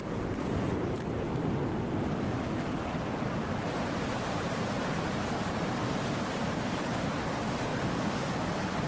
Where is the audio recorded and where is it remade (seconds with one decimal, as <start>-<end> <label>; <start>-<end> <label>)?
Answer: 0.0-1.4 remade; 1.4-4.0 recorded; 4.0-7.7 remade; 7.7-8.9 recorded